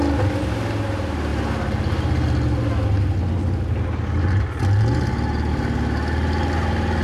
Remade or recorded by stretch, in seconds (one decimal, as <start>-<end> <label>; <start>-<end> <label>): 0.0-7.0 recorded